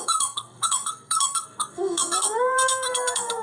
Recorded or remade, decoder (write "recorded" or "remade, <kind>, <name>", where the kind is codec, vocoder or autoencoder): remade, codec, SNAC